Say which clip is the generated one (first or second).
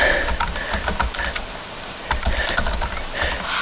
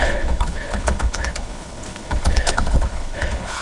second